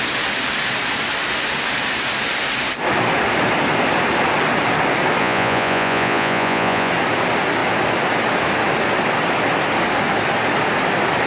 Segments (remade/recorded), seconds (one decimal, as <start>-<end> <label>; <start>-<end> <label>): 0.0-5.2 recorded; 5.2-6.9 remade; 6.9-11.3 recorded